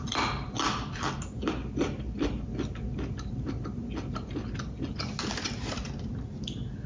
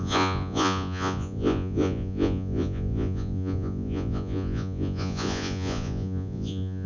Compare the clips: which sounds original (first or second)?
first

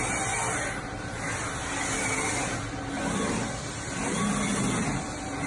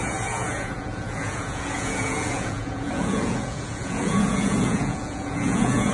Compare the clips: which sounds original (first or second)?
first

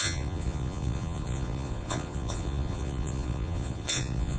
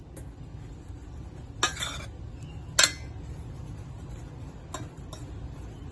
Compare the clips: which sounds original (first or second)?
second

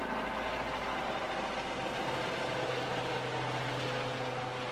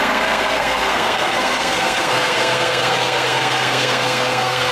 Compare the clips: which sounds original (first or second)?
first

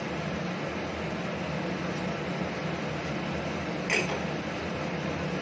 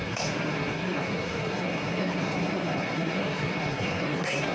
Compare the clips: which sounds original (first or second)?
first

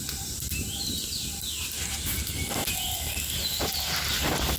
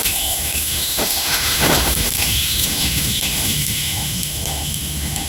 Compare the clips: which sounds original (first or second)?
first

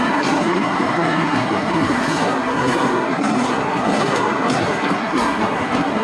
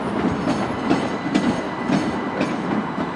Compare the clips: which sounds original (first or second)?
second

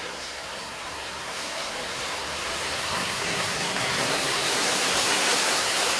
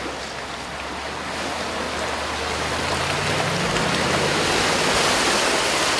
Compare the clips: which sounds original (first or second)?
second